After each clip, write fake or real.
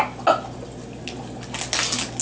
real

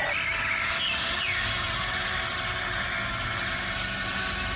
real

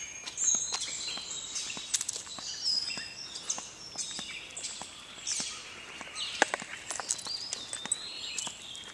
real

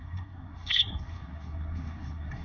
fake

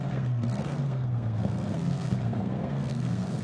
fake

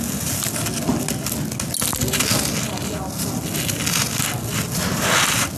real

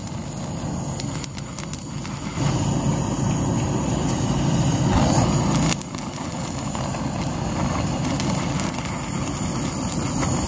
real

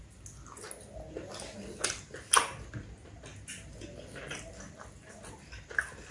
real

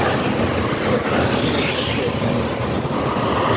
real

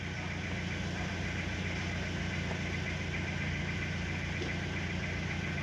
real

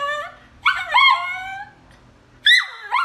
real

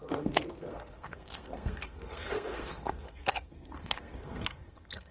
fake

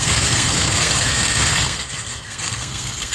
fake